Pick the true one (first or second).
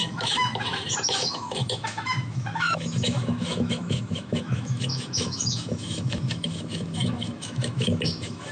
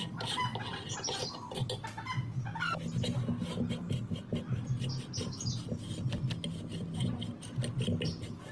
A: second